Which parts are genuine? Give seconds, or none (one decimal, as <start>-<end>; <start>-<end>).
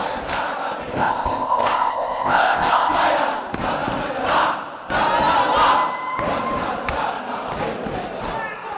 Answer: 0.0-0.9; 2.9-8.8